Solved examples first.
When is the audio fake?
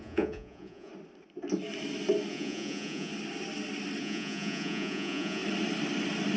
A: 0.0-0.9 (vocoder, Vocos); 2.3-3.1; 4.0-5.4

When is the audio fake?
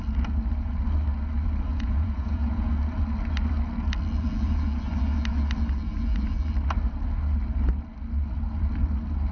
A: 1.7-2.7 (vocoder, Vocos)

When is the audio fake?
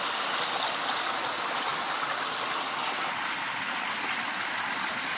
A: none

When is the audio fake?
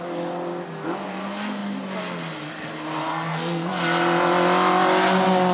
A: 3.1-3.7 (codec, SNAC)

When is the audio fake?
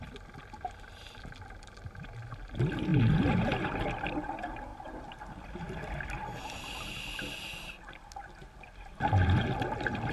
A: none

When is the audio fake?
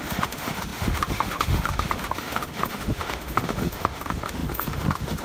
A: 0.0-5.2 (autoencoder, DAC-VAE)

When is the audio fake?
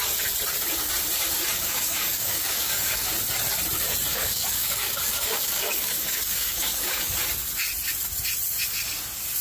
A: 1.5-3.1 (codec, DAC); 4.1-7.1